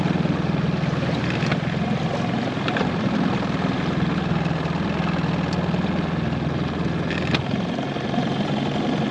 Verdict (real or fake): real